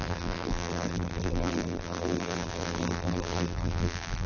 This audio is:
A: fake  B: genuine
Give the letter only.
A